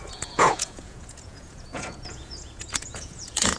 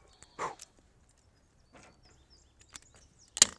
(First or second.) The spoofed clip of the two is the first